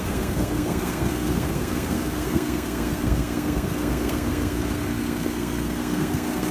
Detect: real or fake fake